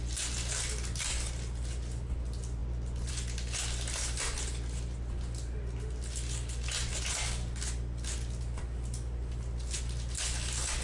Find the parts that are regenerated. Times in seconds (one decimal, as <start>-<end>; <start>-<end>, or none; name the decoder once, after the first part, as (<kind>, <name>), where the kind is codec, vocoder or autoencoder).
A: none